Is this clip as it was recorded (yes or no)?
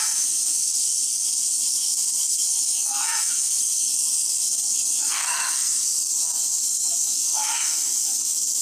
no